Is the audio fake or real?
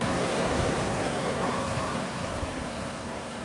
fake